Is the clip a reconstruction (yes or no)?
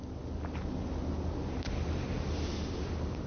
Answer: no